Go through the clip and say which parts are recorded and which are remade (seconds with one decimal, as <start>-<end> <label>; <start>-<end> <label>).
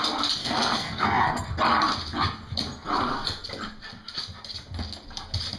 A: 0.0-0.4 recorded; 0.4-1.5 remade; 1.5-5.6 recorded